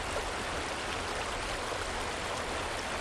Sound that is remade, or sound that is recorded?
recorded